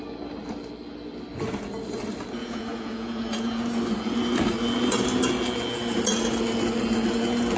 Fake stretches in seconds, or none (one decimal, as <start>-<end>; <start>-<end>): 2.4-3.6